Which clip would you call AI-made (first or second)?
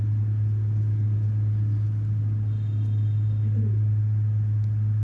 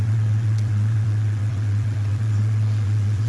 second